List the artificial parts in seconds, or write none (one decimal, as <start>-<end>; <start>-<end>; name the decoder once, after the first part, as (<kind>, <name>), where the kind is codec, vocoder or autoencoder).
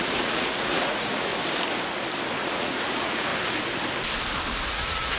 0.0-1.3 (vocoder, Vocos); 2.4-3.3; 4.7-5.2